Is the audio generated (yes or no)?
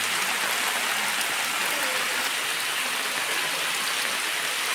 no